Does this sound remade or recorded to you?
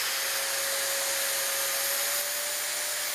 recorded